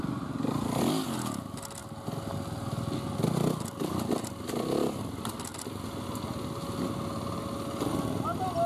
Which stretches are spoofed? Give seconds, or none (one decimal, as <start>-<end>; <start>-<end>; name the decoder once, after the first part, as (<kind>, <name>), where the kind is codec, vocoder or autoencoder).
none